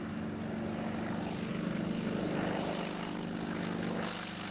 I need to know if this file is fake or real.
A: real